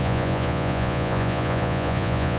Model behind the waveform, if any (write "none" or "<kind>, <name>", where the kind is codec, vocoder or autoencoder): vocoder, Vocos